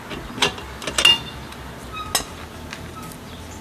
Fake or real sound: real